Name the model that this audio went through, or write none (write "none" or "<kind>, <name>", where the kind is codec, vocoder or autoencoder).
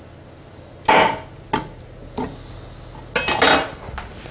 none